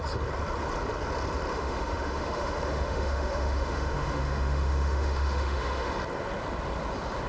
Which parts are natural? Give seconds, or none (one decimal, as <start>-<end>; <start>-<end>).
0.0-1.5; 5.9-7.3